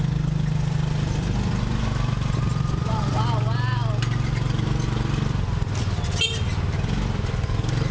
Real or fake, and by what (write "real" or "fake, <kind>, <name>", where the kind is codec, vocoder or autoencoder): real